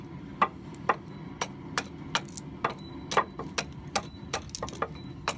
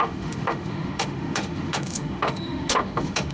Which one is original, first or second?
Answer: first